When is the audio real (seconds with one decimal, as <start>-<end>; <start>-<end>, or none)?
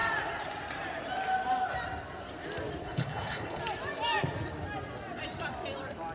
0.0-2.8; 3.6-6.1